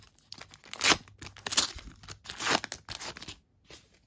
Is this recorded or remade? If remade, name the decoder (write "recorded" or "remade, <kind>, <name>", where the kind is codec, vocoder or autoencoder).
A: recorded